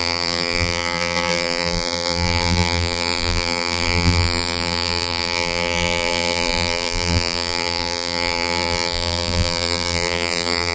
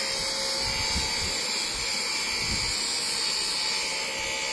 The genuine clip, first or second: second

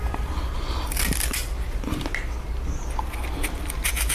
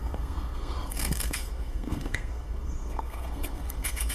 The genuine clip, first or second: first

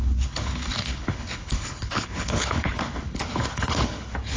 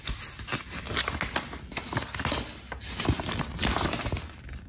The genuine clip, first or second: second